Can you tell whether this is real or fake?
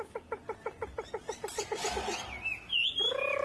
real